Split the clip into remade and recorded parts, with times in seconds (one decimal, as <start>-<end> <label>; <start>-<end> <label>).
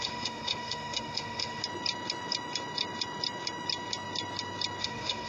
0.0-1.6 remade; 1.6-4.8 recorded; 4.8-5.3 remade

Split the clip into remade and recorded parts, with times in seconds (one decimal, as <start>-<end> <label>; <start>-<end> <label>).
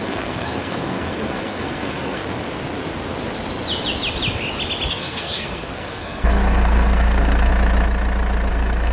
0.0-2.2 remade; 2.2-4.9 recorded; 4.9-7.5 remade; 7.5-8.5 recorded; 8.5-8.9 remade